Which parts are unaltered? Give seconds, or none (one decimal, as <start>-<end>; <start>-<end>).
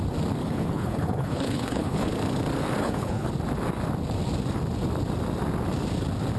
0.0-0.4; 2.1-2.8; 3.3-6.4